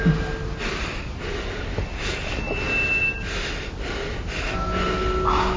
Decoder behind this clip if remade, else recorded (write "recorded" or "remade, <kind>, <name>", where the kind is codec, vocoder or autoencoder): recorded